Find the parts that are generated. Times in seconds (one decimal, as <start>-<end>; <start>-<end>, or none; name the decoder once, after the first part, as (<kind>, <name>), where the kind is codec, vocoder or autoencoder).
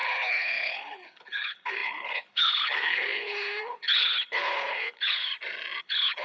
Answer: 0.0-5.3 (codec, HILCodec); 5.8-6.2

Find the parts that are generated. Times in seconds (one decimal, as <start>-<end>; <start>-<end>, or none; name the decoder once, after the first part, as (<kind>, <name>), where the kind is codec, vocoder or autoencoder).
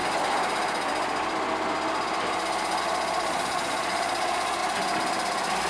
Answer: 2.8-4.6 (vocoder, Vocos)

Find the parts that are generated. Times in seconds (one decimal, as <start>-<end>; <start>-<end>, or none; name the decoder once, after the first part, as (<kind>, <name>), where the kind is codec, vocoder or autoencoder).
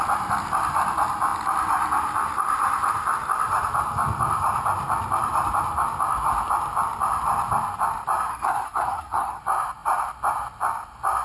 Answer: 8.3-9.4 (codec, SNAC)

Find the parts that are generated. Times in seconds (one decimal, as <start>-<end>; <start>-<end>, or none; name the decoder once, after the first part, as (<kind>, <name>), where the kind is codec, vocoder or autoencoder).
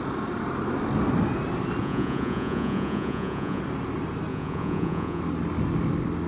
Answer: 1.8-3.6 (vocoder, Vocos); 4.3-5.2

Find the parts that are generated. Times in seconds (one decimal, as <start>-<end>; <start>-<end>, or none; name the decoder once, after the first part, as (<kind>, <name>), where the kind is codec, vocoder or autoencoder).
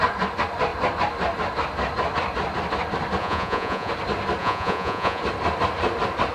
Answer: 3.2-3.9 (vocoder, Vocos); 4.4-5.2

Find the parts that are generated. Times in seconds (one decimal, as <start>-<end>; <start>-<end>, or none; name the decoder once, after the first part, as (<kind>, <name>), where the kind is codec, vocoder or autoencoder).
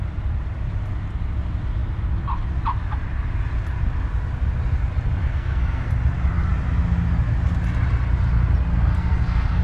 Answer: 5.2-5.9 (codec, SNAC); 8.7-9.6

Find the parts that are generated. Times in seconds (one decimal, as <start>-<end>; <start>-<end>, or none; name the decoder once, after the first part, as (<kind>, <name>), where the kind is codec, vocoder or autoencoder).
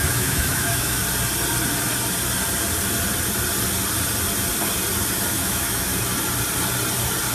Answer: 0.0-1.0 (autoencoder, DAC-VAE); 5.4-5.9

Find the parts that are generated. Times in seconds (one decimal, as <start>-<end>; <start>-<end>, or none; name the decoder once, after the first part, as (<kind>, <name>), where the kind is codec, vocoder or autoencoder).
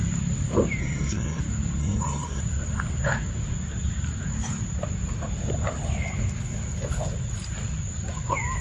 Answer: 0.8-1.4 (codec, SNAC); 1.8-2.4